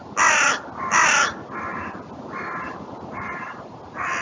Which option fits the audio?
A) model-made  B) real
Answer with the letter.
B